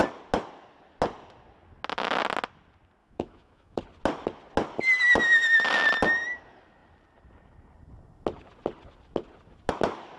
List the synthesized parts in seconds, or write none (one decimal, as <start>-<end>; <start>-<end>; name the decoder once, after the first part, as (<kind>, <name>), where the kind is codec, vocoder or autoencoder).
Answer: 3.0-3.8 (autoencoder, DAC-VAE)